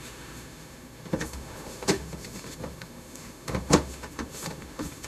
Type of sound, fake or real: fake